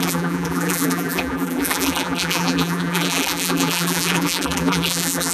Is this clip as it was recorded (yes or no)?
no